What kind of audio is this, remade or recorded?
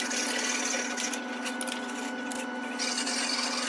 recorded